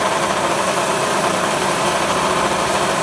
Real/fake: fake